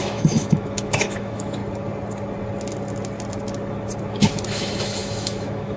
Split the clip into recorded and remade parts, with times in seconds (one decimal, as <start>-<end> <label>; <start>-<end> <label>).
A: 0.0-1.6 remade; 1.6-4.5 recorded; 4.5-5.8 remade

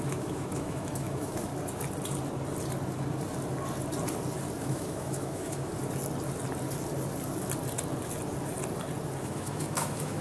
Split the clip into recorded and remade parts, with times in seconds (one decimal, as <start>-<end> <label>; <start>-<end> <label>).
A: 0.0-1.5 remade; 1.5-4.6 recorded; 4.6-5.7 remade; 5.7-9.2 recorded; 9.2-10.2 remade

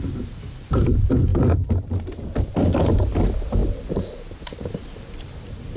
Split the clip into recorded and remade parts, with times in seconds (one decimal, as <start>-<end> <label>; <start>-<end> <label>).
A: 0.0-5.8 recorded

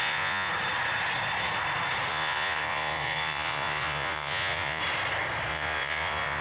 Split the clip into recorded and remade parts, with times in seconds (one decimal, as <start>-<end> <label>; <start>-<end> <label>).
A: 0.0-0.5 remade; 0.5-2.1 recorded; 2.1-4.8 remade; 4.8-5.5 recorded; 5.5-6.4 remade

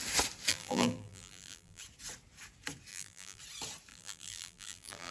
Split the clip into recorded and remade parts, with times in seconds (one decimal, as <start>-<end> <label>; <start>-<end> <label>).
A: 0.0-0.5 recorded; 0.5-1.8 remade; 1.8-2.9 recorded; 2.9-3.4 remade; 3.4-3.9 recorded; 3.9-5.1 remade

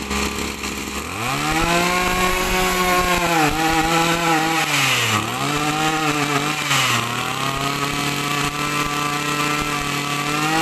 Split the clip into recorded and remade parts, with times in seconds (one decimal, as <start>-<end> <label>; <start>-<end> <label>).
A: 0.0-2.3 recorded; 2.3-3.0 remade; 3.0-10.6 recorded

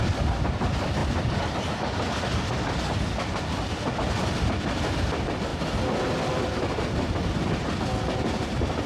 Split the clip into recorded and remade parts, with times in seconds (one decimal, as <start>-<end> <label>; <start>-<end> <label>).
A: 0.0-5.5 remade; 5.5-6.6 recorded; 6.6-8.9 remade

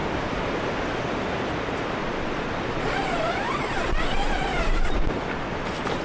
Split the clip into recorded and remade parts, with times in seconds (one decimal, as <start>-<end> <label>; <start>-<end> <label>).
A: 0.0-2.0 recorded; 2.0-4.6 remade; 4.6-6.0 recorded